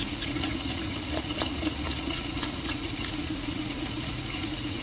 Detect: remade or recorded remade